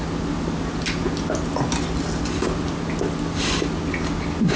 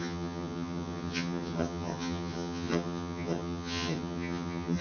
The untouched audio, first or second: first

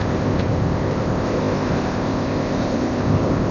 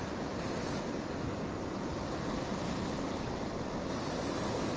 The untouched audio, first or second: second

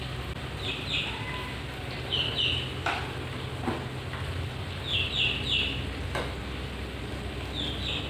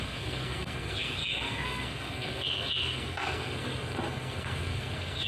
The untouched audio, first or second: first